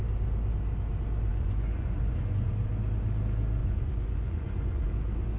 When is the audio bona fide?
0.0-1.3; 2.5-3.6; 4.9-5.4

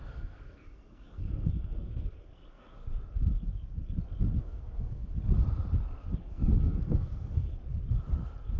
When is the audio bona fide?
2.8-4.4; 5.1-6.2; 7.5-8.6